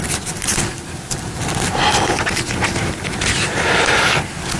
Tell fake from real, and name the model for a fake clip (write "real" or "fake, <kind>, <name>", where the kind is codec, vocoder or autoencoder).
real